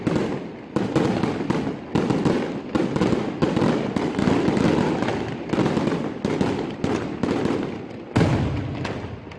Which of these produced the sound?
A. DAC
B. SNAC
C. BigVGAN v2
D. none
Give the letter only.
D